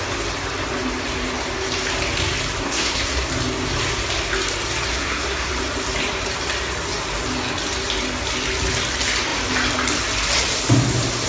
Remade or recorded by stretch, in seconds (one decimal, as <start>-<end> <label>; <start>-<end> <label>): 0.0-2.6 recorded; 2.6-3.3 remade; 3.3-4.9 recorded; 4.9-5.5 remade; 5.5-11.3 recorded